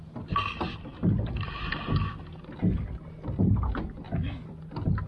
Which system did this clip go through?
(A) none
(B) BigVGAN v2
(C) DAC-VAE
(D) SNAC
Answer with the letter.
A